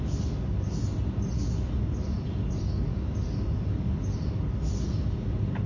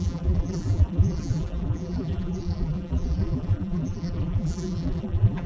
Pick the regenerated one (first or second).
second